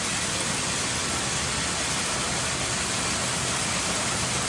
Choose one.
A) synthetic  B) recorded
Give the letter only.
B